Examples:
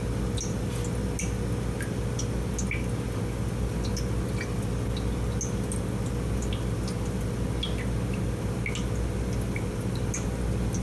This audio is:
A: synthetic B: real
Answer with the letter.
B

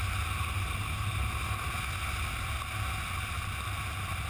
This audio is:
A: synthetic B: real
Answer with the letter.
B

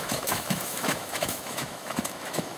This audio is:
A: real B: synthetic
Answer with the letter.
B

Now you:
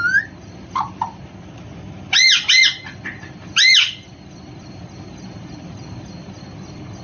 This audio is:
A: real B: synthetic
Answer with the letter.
A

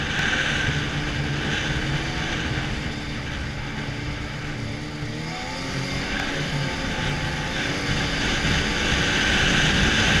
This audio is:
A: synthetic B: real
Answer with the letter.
B